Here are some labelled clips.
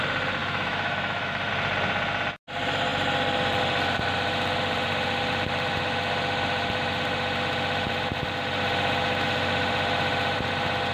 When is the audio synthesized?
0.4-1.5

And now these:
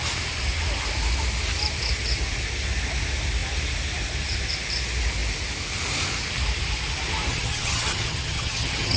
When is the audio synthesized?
7.3-9.0

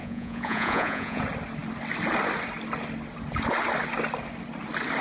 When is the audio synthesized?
0.0-1.2

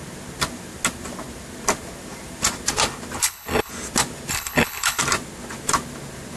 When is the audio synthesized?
3.2-3.7; 4.3-5.0

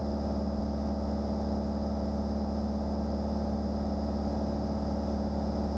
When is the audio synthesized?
none